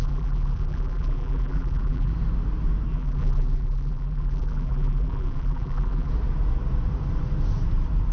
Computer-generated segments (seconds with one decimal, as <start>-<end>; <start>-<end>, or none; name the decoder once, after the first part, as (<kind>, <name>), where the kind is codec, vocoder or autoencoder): 0.0-2.1 (vocoder, BigVGAN v2); 2.9-6.1